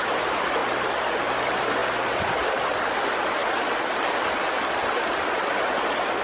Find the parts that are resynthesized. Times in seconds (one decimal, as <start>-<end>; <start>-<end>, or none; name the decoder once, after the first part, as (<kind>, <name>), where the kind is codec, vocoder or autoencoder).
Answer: none